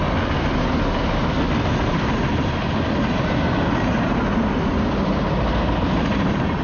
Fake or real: real